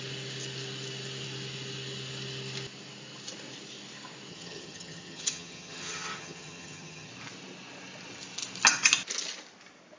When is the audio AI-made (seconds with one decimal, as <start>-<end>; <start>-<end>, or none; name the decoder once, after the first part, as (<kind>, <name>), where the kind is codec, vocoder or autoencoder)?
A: 4.3-7.1 (vocoder, HiFi-GAN)